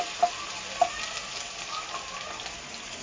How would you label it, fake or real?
real